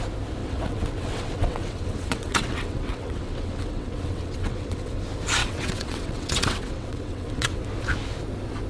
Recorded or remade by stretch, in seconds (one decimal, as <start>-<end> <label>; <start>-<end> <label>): 0.0-0.4 recorded; 0.4-5.0 remade; 5.0-5.4 recorded; 5.4-7.6 remade; 7.6-8.7 recorded